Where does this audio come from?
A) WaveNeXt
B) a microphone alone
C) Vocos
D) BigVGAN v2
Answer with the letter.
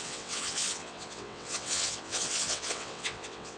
A